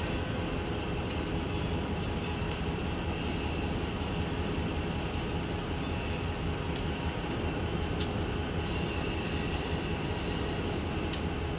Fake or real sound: real